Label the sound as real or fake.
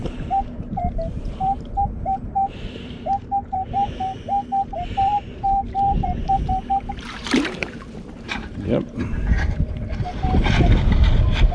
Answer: fake